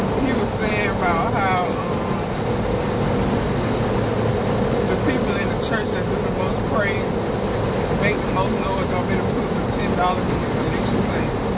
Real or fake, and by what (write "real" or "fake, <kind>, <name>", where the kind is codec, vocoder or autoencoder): real